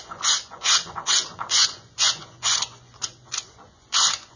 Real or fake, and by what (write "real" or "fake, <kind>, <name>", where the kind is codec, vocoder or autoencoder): fake, vocoder, Vocos